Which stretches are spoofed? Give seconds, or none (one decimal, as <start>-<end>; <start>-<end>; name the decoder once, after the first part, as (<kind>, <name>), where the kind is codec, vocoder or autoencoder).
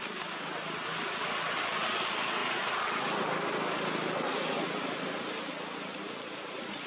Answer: none